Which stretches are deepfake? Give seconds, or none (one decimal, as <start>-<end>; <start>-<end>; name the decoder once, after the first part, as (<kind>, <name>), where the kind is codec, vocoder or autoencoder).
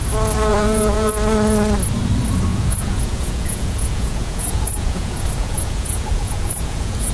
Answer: 0.5-1.1 (vocoder, Vocos); 2.5-7.1